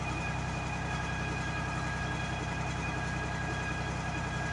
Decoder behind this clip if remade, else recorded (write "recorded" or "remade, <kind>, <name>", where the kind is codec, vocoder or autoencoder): recorded